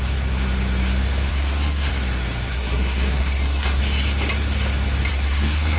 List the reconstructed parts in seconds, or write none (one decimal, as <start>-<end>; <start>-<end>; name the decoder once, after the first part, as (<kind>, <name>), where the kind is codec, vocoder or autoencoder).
1.3-1.9 (codec, SNAC); 2.5-3.8; 5.1-5.8